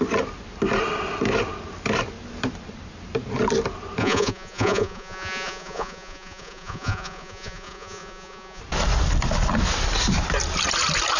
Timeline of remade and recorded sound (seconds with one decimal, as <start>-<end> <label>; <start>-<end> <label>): 0.0-4.0 recorded; 4.0-8.6 remade; 8.6-11.2 recorded